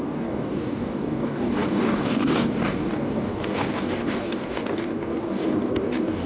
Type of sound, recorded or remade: remade